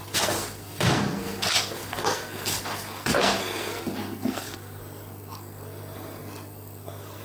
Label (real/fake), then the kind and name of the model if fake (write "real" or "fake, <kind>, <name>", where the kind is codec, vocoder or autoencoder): fake, codec, SNAC